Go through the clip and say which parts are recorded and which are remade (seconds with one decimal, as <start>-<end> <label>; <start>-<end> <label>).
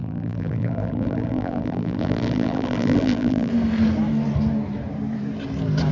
0.0-3.5 remade; 3.5-5.9 recorded